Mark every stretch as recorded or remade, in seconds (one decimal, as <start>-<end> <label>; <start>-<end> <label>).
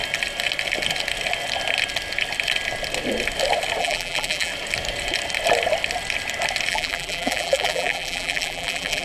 0.0-3.8 recorded; 3.8-4.5 remade; 4.5-6.7 recorded; 6.7-9.0 remade